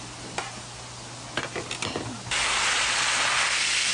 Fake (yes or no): no